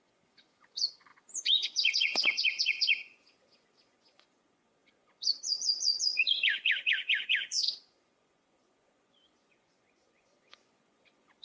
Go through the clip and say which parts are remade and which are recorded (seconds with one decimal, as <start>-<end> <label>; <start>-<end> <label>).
0.0-11.4 remade